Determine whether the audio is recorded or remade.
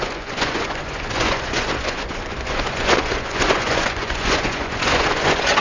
remade